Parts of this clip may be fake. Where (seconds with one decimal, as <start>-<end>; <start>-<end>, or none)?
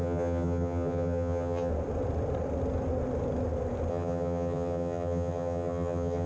0.0-1.7; 3.9-6.3